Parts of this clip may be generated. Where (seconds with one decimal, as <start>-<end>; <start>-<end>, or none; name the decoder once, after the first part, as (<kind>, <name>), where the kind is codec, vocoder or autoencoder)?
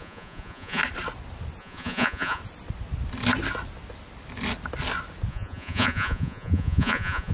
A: 0.0-0.8 (vocoder, Vocos); 1.6-2.4; 5.3-7.3